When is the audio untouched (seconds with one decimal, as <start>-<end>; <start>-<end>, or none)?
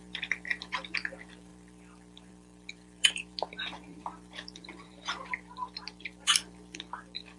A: none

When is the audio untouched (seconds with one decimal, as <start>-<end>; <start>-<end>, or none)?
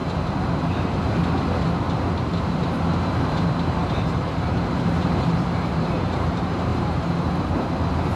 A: 0.0-2.1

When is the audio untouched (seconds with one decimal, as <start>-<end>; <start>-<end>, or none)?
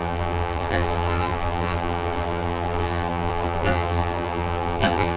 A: none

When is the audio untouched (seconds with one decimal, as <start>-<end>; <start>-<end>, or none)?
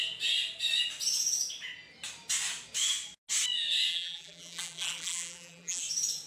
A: 0.0-3.9; 5.8-6.3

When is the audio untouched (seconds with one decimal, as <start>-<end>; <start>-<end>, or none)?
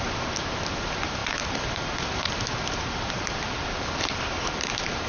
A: none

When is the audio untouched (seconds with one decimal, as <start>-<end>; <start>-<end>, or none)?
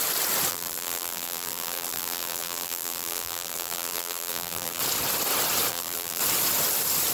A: 0.0-0.5; 4.8-5.7; 6.2-7.1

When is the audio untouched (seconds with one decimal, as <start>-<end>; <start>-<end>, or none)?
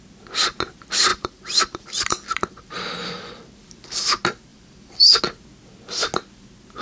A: 0.0-1.1; 3.5-4.5; 5.2-6.8